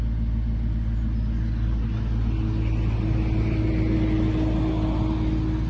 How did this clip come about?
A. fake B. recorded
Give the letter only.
B